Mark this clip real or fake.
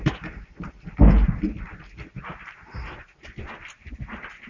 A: real